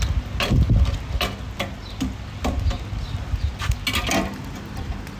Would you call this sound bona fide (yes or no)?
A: yes